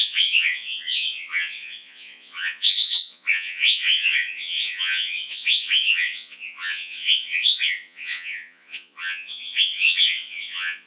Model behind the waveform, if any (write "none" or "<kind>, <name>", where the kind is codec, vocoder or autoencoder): vocoder, Vocos